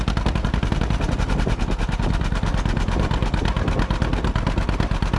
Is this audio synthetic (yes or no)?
no